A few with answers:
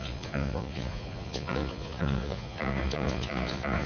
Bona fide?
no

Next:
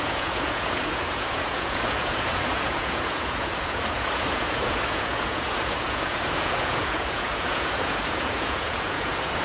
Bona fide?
no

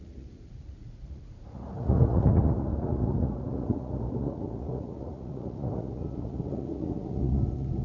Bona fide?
no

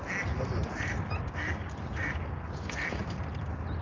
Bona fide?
yes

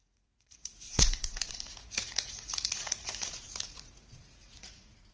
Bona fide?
no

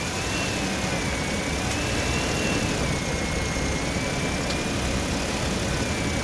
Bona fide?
yes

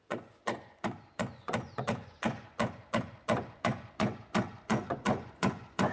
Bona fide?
no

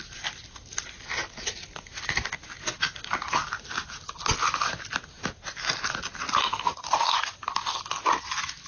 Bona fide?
yes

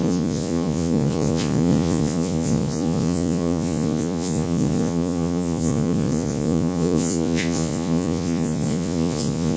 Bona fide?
no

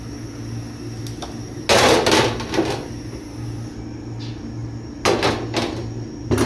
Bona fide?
yes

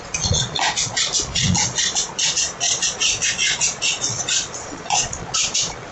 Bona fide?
no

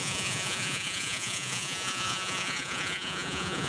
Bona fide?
no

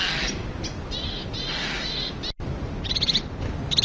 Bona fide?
yes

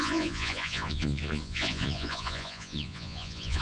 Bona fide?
no